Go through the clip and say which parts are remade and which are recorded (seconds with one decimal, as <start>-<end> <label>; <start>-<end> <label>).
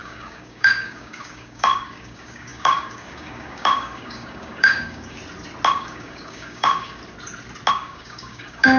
0.0-5.2 remade; 5.2-5.7 recorded; 5.7-7.0 remade; 7.0-7.7 recorded; 7.7-8.8 remade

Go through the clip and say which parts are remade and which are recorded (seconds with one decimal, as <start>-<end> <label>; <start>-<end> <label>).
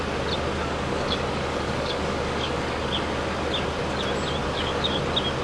0.0-0.6 recorded; 0.6-2.9 remade; 2.9-4.4 recorded; 4.4-5.0 remade; 5.0-5.4 recorded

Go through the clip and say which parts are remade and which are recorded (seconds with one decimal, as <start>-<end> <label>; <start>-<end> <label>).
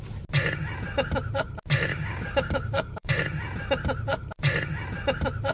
0.0-1.9 recorded; 1.9-3.1 remade; 3.1-5.5 recorded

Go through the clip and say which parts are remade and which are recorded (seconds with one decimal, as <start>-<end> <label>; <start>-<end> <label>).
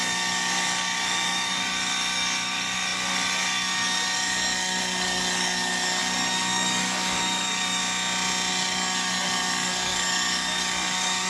0.0-7.8 remade; 7.8-8.5 recorded; 8.5-11.3 remade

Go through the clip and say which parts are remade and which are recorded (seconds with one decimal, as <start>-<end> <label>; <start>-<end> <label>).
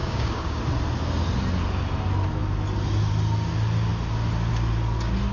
0.0-0.6 remade; 0.6-5.3 recorded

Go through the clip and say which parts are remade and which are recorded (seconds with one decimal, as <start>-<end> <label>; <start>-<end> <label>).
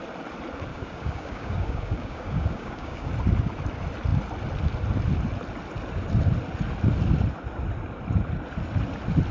0.0-0.7 recorded; 0.7-3.1 remade; 3.1-9.3 recorded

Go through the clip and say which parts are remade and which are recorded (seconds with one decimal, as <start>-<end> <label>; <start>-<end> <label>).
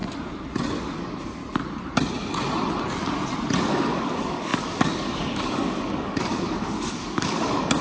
0.0-0.8 recorded; 0.8-1.4 remade; 1.4-3.6 recorded; 3.6-7.8 remade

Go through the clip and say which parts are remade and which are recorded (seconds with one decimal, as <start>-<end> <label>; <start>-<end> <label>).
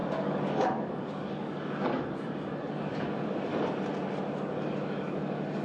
0.0-3.5 remade; 3.5-4.3 recorded; 4.3-5.6 remade